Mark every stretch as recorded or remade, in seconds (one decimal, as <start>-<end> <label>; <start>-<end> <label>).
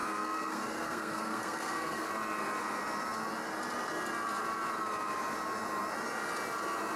0.0-2.1 remade; 2.1-7.0 recorded